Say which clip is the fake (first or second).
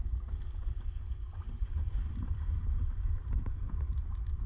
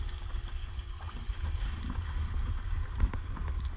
first